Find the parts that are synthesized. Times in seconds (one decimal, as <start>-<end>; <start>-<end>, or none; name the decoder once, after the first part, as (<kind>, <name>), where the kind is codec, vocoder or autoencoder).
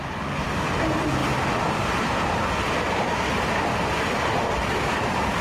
none